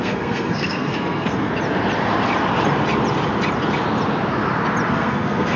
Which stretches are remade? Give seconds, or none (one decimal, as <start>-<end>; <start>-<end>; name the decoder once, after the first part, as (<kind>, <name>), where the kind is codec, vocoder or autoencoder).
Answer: 0.0-1.5 (codec, SNAC); 4.9-5.6